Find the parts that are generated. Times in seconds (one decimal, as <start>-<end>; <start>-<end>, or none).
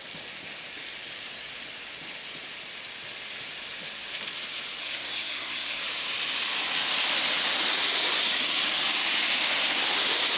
4.8-5.8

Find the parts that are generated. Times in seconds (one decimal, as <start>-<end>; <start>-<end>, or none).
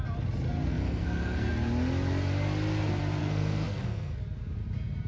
0.7-1.5; 3.2-4.2